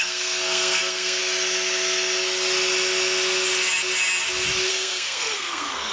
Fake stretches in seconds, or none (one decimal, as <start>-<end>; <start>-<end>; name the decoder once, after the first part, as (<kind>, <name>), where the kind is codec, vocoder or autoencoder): 0.0-1.2 (codec, SNAC); 4.7-5.9